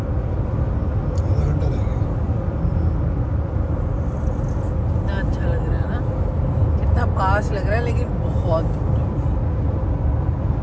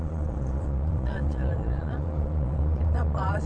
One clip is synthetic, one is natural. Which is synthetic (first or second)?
second